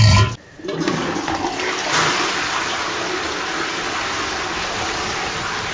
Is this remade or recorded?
recorded